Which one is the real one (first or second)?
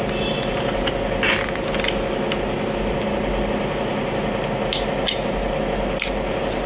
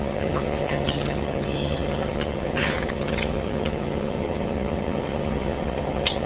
first